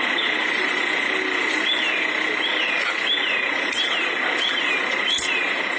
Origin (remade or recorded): recorded